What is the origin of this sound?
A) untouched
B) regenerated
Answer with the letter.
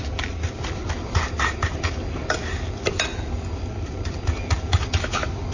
A